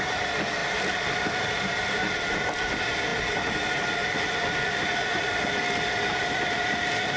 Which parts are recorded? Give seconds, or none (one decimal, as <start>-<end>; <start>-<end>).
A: 0.0-7.2